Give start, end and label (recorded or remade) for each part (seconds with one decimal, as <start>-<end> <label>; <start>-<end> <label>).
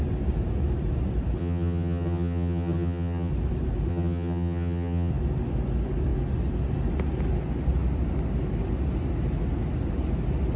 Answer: 0.0-1.4 recorded; 1.4-3.3 remade; 3.3-3.9 recorded; 3.9-5.1 remade; 5.1-10.6 recorded